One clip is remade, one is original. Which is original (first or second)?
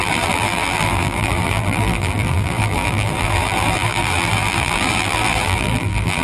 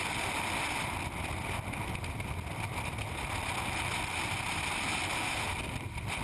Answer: second